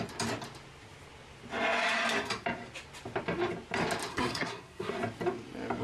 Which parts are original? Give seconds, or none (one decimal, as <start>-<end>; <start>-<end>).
0.0-4.1; 4.9-5.8